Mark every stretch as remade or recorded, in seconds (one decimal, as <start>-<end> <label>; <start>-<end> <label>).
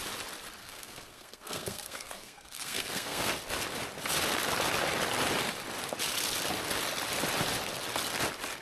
0.0-0.6 recorded; 0.6-3.3 remade; 3.3-8.6 recorded